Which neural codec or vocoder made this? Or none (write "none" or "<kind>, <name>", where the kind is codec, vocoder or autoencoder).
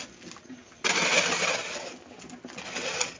none